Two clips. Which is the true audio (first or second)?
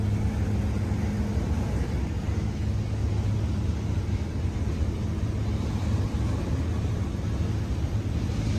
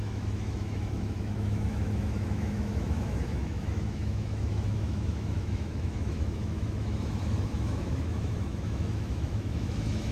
first